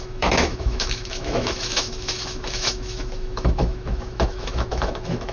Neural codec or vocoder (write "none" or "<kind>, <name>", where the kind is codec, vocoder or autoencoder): autoencoder, DAC-VAE